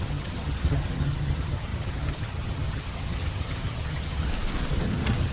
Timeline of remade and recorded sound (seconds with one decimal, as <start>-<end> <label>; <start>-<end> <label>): 0.0-4.3 remade; 4.3-4.8 recorded; 4.8-5.3 remade